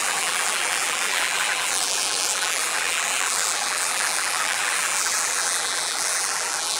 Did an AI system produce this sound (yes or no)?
yes